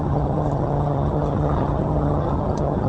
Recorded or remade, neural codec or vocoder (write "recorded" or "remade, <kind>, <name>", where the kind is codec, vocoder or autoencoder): remade, vocoder, HiFi-GAN